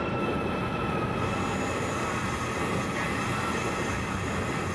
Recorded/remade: recorded